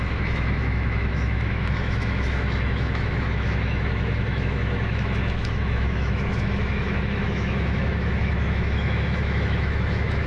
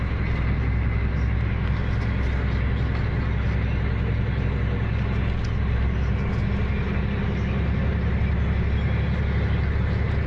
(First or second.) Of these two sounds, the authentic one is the second